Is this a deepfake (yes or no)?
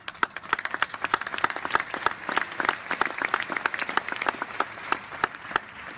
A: no